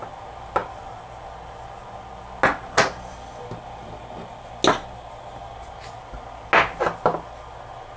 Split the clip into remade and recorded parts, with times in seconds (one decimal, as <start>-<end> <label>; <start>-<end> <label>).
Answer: 0.0-8.0 recorded